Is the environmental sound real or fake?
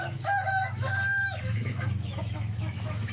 fake